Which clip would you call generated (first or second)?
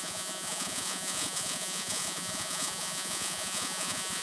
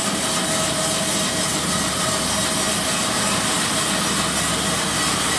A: first